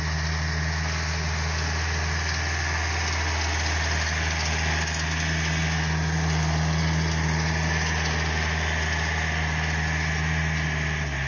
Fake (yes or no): no